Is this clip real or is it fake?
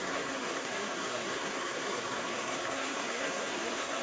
fake